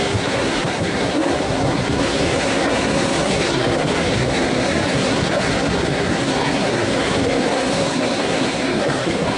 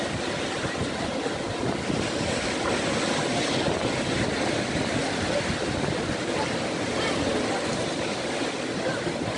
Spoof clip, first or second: first